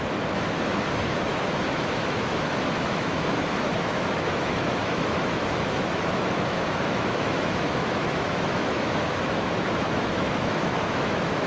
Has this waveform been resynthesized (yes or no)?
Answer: yes